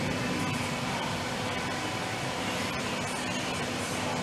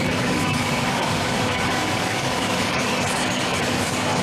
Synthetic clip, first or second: second